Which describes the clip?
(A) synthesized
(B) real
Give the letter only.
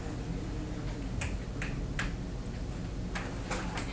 B